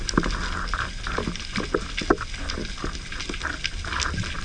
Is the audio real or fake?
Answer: real